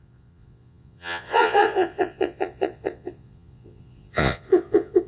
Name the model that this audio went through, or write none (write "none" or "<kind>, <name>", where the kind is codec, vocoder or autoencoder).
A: vocoder, Vocos